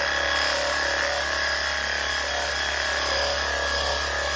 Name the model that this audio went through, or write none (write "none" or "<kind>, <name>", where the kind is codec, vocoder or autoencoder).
none